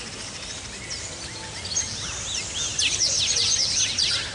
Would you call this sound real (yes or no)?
yes